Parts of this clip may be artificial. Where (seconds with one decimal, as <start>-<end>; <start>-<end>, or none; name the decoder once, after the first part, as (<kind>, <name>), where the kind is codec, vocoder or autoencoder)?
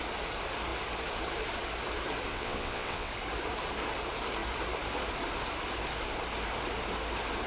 2.3-3.1 (vocoder, WaveNeXt)